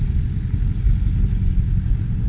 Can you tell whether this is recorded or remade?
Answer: recorded